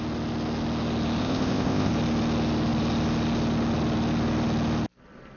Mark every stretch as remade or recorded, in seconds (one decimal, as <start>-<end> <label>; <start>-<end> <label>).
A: 0.0-1.2 recorded; 1.2-1.9 remade; 1.9-5.4 recorded